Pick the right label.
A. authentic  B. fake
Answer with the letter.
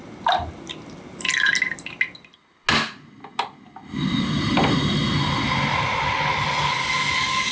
A